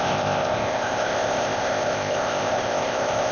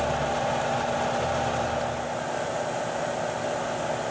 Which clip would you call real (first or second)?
second